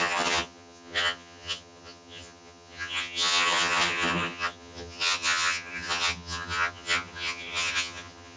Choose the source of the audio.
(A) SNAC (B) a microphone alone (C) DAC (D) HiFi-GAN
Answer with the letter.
D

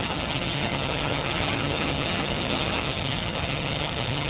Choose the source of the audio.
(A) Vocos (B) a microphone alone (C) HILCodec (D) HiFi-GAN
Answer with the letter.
D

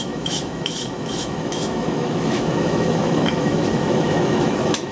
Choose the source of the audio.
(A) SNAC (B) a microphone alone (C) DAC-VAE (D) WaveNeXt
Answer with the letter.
C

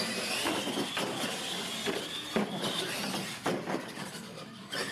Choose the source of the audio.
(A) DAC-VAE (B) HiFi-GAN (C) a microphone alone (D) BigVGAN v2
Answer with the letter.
C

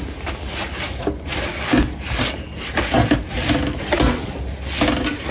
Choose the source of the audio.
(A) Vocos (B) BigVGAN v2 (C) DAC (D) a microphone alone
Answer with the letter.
D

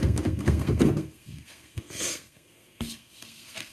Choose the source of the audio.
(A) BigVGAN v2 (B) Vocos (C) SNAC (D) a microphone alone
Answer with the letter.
C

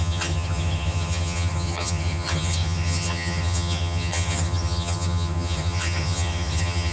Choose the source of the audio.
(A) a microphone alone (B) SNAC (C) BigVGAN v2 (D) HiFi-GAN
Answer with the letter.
D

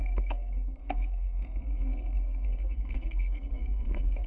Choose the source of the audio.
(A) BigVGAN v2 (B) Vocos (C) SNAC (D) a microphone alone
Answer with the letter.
C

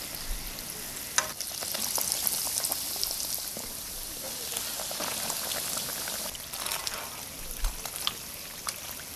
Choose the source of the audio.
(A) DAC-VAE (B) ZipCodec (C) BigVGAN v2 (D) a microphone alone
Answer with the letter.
D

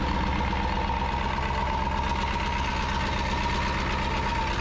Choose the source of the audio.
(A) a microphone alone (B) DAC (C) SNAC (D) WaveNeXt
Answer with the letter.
A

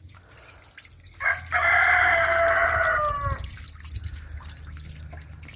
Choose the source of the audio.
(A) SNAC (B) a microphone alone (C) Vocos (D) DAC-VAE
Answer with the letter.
B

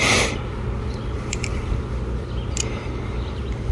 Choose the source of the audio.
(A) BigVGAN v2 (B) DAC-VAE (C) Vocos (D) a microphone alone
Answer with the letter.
D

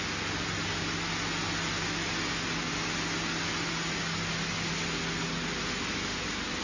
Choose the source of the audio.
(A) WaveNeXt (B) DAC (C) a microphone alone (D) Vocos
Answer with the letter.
C